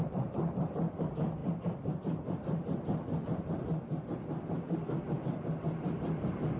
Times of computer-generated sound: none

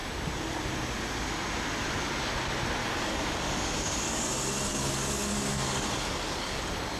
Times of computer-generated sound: 2.8-4.3 (codec, DAC); 4.7-6.6

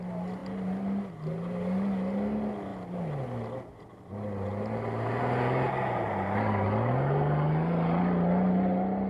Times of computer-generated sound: none

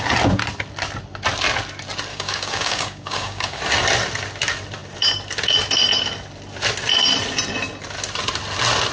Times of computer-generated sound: 2.1-3.6 (codec, DAC)

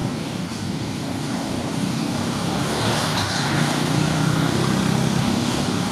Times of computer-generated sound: 0.0-4.6 (codec, DAC); 5.2-5.9